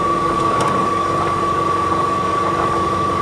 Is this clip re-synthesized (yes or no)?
yes